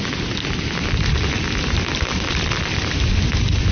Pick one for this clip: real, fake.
real